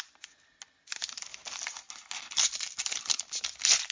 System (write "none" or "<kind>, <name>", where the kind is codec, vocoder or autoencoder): none